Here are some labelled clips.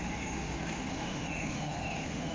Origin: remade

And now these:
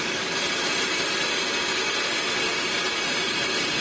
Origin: recorded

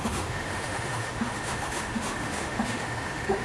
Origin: remade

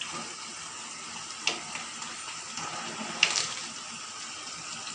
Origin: recorded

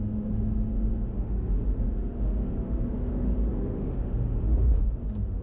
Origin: remade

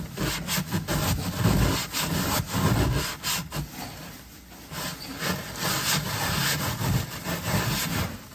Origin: recorded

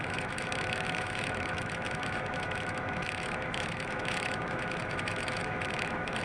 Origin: remade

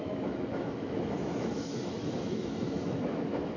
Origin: remade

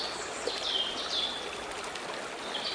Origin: recorded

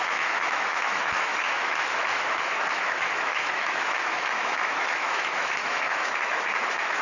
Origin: remade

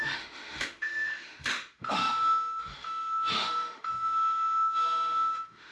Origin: remade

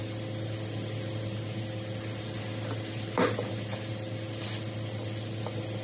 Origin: recorded